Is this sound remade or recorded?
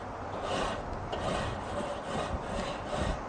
recorded